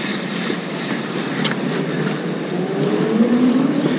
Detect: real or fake real